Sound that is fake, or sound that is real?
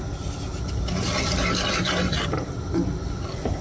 real